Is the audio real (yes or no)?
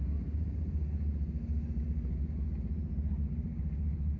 yes